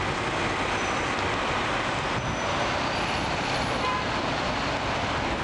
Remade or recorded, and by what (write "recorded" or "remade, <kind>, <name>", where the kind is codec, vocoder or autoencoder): recorded